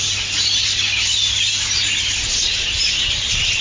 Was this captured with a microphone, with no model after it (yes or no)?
yes